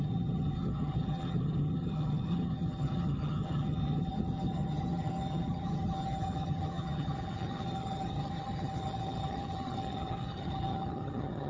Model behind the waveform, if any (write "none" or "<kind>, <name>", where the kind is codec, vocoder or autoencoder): vocoder, HiFi-GAN